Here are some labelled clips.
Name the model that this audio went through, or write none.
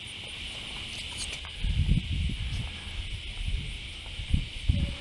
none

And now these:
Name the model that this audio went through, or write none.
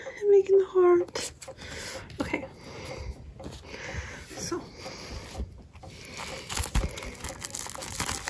none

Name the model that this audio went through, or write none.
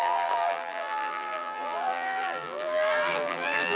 vocoder, BigVGAN v2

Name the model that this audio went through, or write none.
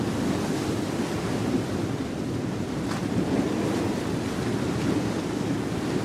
none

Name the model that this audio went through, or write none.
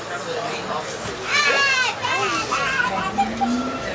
none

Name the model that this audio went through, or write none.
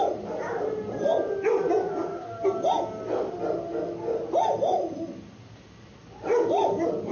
none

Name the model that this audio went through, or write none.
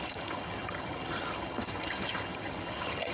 vocoder, HiFi-GAN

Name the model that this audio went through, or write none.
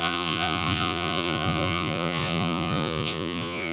vocoder, Vocos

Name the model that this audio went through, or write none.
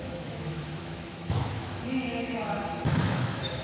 autoencoder, DAC-VAE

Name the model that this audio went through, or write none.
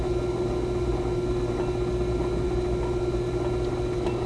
none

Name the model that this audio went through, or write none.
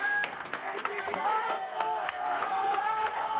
codec, SNAC